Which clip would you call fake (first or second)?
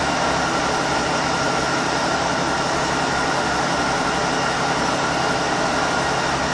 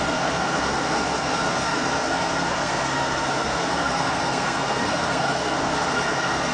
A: second